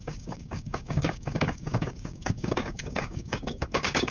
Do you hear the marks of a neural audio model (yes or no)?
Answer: yes